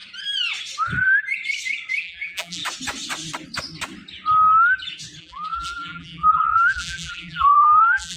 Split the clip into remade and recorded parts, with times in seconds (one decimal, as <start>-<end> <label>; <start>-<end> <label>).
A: 0.0-2.0 recorded; 2.0-2.6 remade; 2.6-5.2 recorded; 5.2-8.2 remade